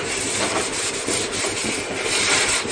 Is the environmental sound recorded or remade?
remade